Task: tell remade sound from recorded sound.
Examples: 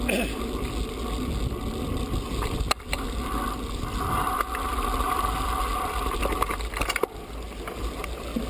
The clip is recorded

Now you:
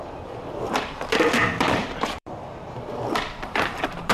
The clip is remade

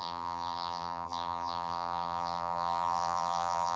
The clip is remade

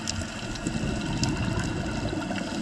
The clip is recorded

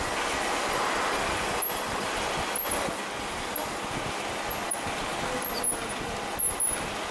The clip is recorded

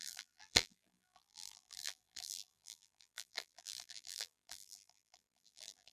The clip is remade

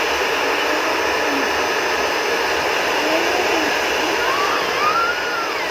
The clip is recorded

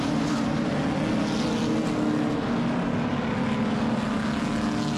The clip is recorded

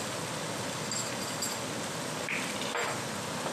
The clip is recorded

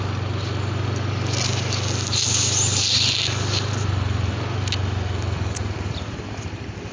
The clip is recorded